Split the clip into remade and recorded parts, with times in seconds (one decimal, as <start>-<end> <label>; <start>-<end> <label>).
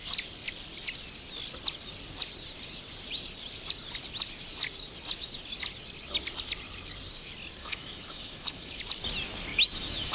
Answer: 0.0-7.6 recorded; 7.6-8.8 remade; 8.8-9.5 recorded; 9.5-10.1 remade